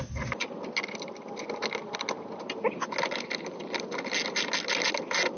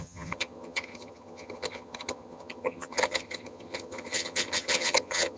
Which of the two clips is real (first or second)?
first